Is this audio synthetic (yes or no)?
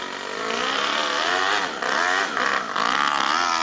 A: no